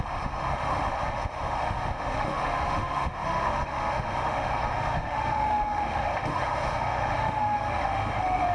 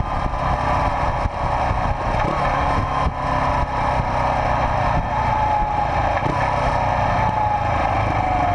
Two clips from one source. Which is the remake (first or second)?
first